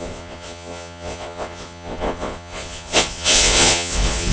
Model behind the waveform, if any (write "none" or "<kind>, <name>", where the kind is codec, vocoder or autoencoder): vocoder, Vocos